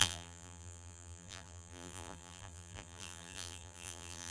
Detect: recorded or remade remade